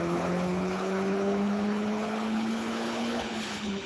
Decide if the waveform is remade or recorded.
remade